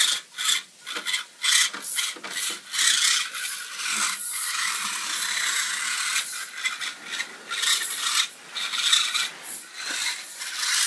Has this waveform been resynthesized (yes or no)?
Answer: no